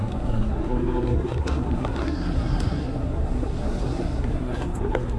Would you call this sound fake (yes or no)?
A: yes